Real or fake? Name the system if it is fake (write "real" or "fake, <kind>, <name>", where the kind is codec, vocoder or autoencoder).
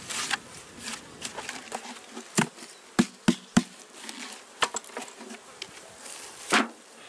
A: real